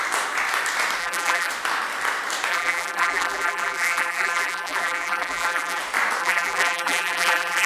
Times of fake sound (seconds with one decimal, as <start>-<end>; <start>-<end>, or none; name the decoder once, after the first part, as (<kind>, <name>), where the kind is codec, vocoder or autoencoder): 1.0-1.5 (vocoder, BigVGAN v2); 2.5-5.8; 6.2-7.7